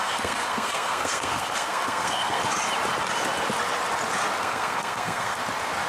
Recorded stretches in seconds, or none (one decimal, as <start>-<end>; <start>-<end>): 2.4-4.4; 5.4-5.9